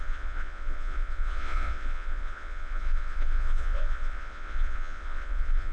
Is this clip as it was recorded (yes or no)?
no